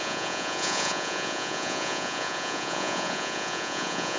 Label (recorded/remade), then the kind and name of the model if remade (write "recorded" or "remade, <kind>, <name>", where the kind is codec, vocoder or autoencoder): remade, vocoder, Vocos